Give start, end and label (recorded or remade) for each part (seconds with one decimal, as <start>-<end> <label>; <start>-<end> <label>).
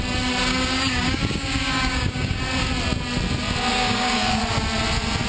0.0-0.5 recorded; 0.5-2.4 remade; 2.4-3.7 recorded; 3.7-4.4 remade; 4.4-5.3 recorded